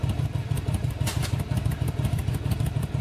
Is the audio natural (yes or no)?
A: yes